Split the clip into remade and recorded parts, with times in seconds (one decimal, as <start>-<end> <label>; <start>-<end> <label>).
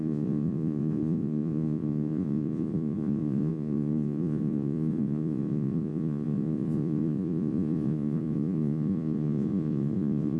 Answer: 0.0-10.4 remade